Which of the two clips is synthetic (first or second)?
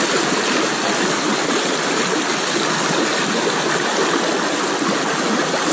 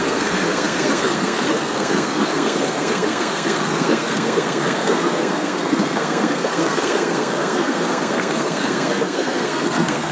second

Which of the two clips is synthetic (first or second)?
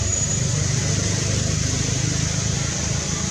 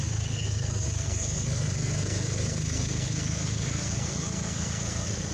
second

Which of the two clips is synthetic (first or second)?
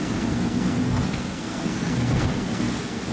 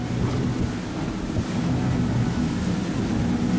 first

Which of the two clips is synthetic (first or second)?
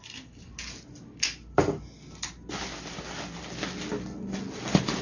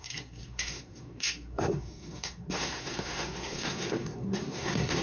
second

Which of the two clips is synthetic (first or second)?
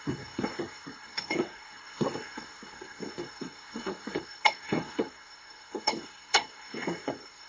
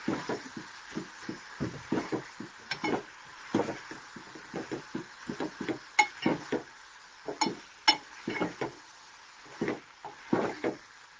first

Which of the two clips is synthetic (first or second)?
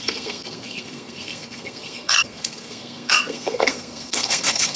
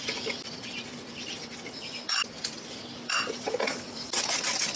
first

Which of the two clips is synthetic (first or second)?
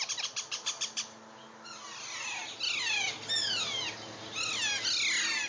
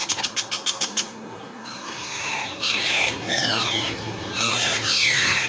second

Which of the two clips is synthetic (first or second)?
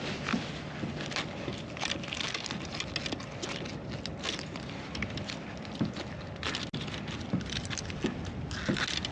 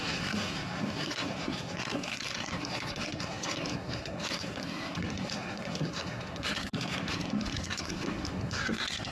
second